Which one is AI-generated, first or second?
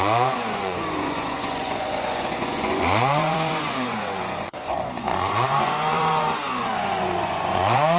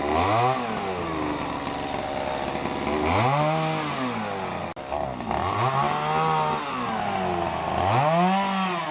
first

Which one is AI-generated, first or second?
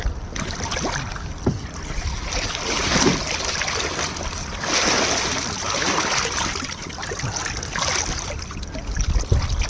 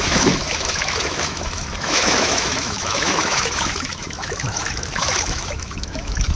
second